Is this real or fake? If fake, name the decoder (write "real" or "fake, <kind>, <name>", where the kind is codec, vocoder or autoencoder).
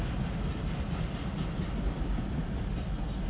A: real